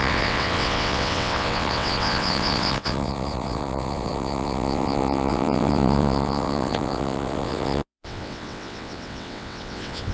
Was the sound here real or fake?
fake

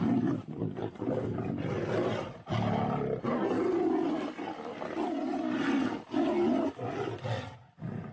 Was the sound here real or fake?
real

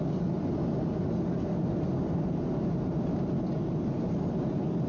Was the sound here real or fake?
real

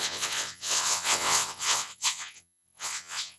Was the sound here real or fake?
fake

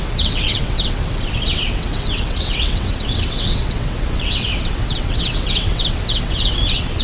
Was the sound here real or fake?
fake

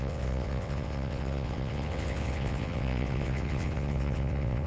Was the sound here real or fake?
fake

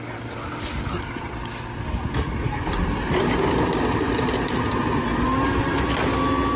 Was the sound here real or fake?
real